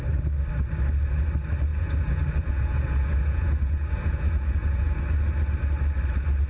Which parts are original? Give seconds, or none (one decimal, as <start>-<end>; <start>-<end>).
0.0-1.7; 5.0-6.5